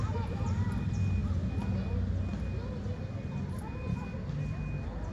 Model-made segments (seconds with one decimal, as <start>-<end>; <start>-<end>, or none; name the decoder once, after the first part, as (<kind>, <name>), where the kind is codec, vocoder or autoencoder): none